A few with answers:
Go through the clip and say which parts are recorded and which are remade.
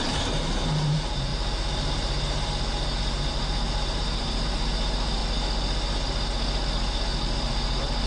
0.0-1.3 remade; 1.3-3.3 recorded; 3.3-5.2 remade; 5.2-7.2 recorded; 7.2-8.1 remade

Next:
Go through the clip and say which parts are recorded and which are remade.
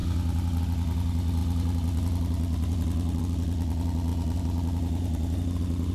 0.0-4.1 recorded; 4.1-5.9 remade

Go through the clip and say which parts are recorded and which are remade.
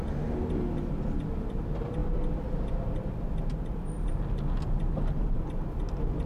0.0-6.3 recorded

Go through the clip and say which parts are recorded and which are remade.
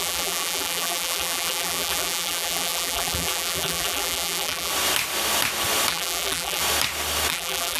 0.0-4.7 remade; 4.7-5.9 recorded; 5.9-6.6 remade; 6.6-7.3 recorded; 7.3-7.8 remade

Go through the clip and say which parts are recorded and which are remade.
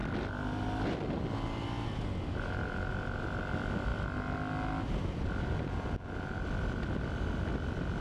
0.0-8.0 recorded